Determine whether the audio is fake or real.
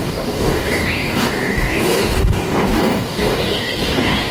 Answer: fake